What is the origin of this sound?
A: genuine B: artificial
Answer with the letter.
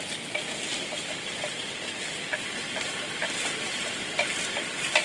A